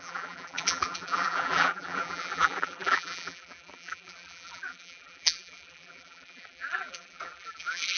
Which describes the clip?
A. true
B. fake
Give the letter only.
B